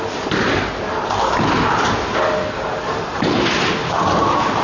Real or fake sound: real